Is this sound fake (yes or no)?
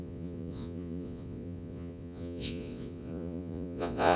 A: yes